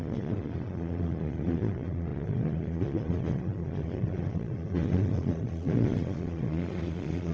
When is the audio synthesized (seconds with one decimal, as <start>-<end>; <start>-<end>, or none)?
0.0-7.3